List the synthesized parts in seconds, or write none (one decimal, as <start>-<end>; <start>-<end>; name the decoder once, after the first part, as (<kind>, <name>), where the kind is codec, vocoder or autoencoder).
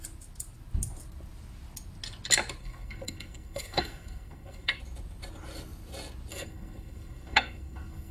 2.6-4.8 (codec, SNAC); 6.3-8.1